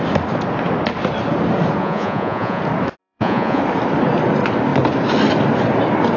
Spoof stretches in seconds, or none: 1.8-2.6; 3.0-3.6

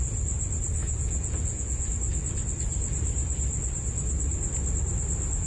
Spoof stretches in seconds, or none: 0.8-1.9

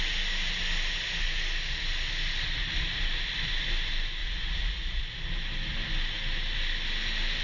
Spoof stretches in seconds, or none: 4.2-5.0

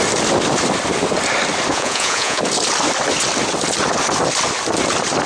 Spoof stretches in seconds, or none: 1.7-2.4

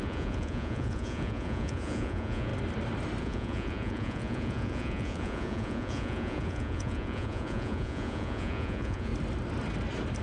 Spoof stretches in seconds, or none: 0.0-2.5; 3.2-9.1

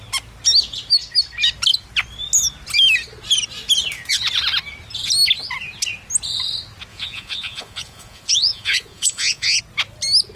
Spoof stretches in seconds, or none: 6.9-9.6

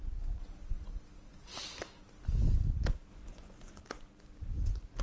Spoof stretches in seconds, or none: 3.1-3.8